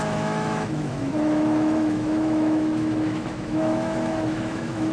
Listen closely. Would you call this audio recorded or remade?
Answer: remade